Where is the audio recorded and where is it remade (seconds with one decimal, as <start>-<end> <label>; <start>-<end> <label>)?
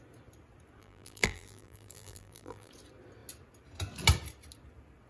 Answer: 0.0-0.8 recorded; 0.8-2.7 remade; 2.7-5.1 recorded